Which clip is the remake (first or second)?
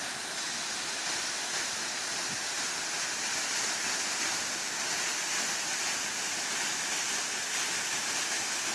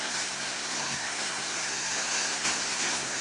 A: second